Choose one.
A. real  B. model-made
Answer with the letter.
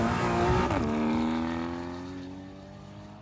A